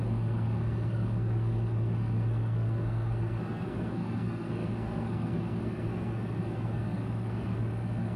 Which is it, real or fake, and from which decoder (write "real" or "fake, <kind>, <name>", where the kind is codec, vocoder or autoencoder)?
fake, codec, SNAC